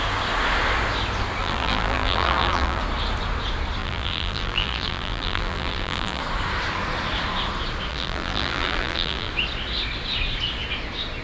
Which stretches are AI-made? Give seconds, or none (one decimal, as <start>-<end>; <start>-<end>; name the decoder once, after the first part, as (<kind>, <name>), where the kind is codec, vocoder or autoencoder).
1.4-2.8 (vocoder, BigVGAN v2); 3.8-6.2; 7.9-9.3